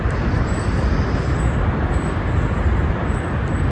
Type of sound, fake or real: real